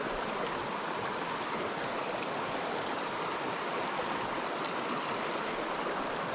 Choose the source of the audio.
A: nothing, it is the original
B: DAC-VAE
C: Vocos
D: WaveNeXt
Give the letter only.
A